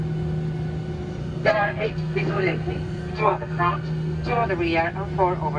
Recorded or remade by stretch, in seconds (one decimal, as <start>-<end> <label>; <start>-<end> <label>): 0.0-1.2 recorded; 1.2-4.5 remade; 4.5-5.6 recorded